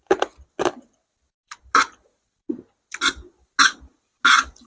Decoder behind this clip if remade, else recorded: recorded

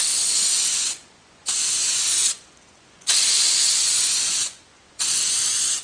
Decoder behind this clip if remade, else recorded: remade, vocoder, Vocos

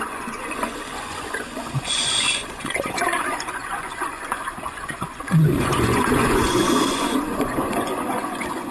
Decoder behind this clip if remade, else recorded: remade, vocoder, Vocos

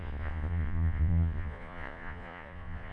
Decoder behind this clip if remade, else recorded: remade, vocoder, Vocos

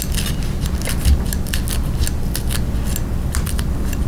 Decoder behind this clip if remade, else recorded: recorded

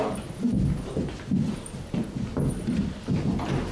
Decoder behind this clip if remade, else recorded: recorded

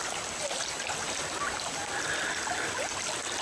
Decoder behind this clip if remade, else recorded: recorded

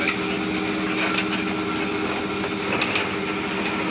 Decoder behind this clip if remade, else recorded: recorded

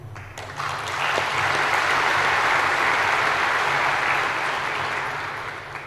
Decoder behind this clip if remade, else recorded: recorded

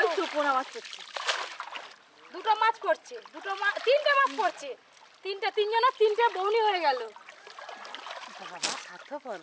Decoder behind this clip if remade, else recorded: recorded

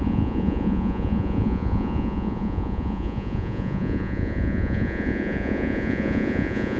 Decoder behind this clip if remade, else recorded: remade, vocoder, Vocos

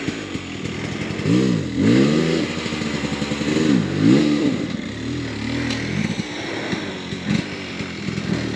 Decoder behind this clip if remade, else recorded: recorded